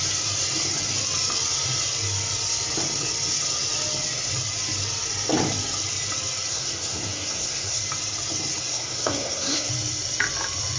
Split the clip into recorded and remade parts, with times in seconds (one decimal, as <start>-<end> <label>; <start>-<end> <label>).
0.0-6.5 recorded; 6.5-7.8 remade; 7.8-8.7 recorded; 8.7-9.7 remade; 9.7-10.8 recorded

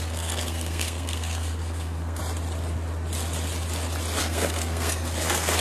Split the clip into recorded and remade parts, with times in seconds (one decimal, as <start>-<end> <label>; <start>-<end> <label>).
0.0-2.2 remade; 2.2-4.2 recorded; 4.2-5.6 remade

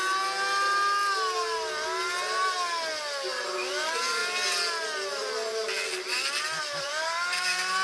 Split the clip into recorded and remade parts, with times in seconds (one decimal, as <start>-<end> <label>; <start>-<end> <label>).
0.0-3.7 recorded; 3.7-4.2 remade; 4.2-6.6 recorded; 6.6-7.8 remade